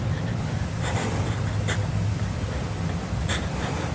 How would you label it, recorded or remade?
recorded